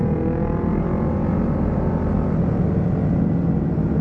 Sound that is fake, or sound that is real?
real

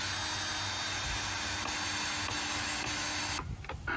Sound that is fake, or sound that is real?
real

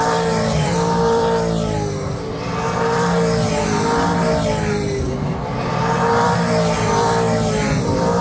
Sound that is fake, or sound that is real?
real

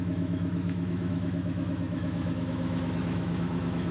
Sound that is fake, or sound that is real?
fake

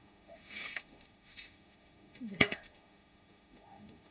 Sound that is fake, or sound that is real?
fake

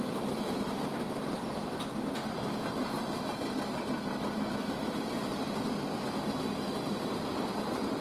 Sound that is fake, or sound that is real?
real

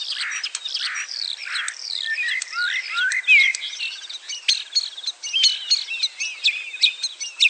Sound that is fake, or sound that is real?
real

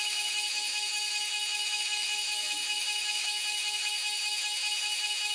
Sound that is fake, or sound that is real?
fake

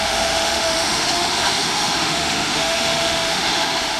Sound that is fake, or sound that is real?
fake